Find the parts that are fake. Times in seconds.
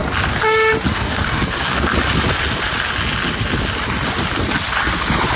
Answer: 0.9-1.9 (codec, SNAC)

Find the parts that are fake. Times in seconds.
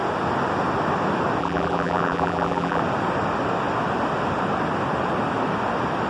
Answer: 1.4-2.8 (vocoder, BigVGAN v2)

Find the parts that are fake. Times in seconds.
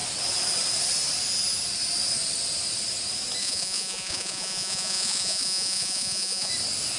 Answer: 3.4-6.5 (vocoder, Vocos)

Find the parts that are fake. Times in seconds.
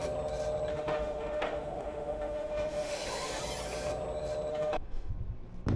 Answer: 0.7-3.4 (autoencoder, DAC-VAE); 4.5-5.1